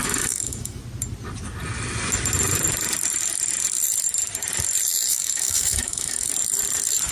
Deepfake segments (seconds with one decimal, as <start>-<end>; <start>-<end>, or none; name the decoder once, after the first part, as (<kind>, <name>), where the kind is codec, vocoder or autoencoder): 0.0-0.8 (autoencoder, DAC-VAE); 5.1-6.3